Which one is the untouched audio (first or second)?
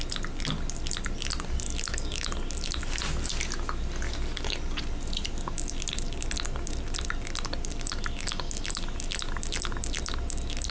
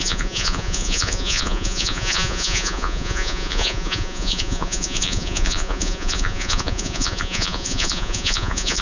first